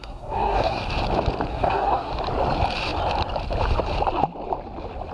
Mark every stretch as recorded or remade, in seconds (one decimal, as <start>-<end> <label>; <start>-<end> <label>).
0.0-0.8 remade; 0.8-1.5 recorded; 1.5-2.1 remade; 2.1-5.1 recorded